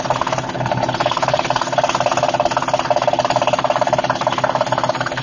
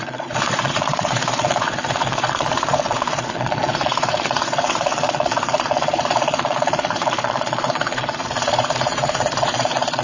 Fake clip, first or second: second